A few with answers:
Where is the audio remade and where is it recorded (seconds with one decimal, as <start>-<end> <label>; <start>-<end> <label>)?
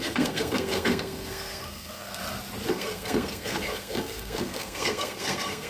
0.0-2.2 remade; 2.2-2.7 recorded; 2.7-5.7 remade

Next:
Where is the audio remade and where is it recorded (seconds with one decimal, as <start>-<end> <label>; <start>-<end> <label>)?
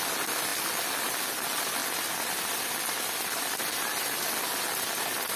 0.0-5.4 recorded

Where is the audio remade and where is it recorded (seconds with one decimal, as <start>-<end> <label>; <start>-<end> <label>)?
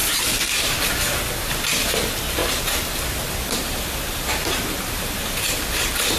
0.0-0.9 remade; 0.9-2.4 recorded; 2.4-6.2 remade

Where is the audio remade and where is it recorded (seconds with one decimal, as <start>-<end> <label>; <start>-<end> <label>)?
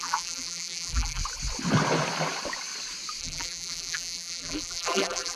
0.0-1.2 remade; 1.2-3.2 recorded; 3.2-5.4 remade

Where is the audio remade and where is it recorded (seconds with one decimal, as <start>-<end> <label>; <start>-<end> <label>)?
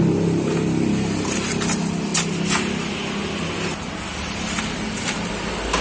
0.0-5.8 recorded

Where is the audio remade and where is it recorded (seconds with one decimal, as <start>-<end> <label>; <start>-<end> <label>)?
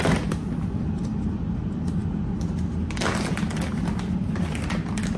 0.0-5.2 recorded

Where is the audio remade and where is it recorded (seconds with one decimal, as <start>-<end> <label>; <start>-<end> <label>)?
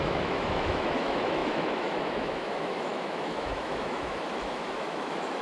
0.0-5.4 remade